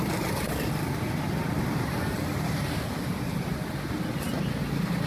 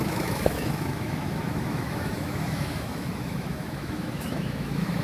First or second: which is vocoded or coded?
second